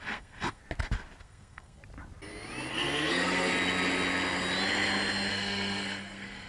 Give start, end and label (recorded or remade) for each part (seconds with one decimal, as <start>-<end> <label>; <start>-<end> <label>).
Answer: 0.0-0.6 remade; 0.6-1.2 recorded; 1.2-1.8 remade; 1.8-2.7 recorded; 2.7-3.5 remade; 3.5-5.3 recorded; 5.3-6.5 remade

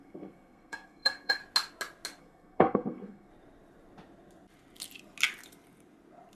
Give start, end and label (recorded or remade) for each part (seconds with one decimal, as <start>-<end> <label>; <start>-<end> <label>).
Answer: 0.0-1.4 remade; 1.4-2.2 recorded; 2.2-3.3 remade; 3.3-6.4 recorded

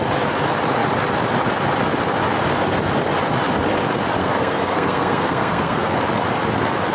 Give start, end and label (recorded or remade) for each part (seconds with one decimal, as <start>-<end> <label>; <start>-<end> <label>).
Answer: 0.0-4.2 recorded; 4.2-6.0 remade; 6.0-6.9 recorded